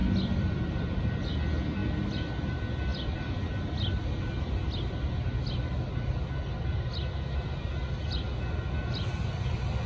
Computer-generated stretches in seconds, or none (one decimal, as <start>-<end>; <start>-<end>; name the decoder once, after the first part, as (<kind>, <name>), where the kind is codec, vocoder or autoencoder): 0.0-1.0 (vocoder, BigVGAN v2); 1.8-2.5; 2.9-3.5